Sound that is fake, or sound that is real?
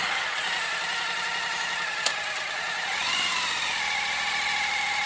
real